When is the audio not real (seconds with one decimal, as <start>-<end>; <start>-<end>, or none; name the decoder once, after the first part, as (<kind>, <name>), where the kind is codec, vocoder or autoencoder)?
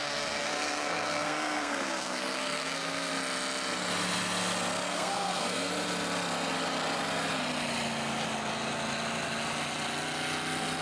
0.0-3.1 (codec, SNAC); 4.9-5.7